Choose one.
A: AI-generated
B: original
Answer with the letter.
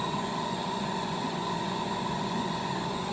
A